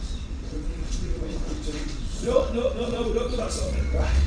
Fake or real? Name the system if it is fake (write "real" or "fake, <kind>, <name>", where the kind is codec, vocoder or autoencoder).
fake, vocoder, WaveNeXt